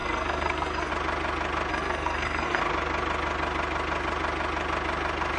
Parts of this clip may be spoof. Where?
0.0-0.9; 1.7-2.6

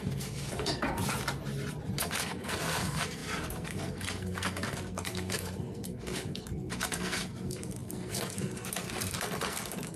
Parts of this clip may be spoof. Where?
0.0-1.0; 2.0-10.0